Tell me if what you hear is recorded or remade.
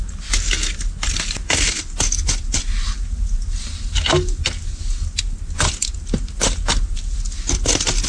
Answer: recorded